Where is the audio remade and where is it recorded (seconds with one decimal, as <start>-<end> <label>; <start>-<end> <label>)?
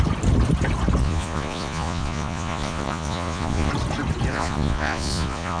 0.0-1.0 recorded; 1.0-3.7 remade; 3.7-4.3 recorded; 4.3-5.6 remade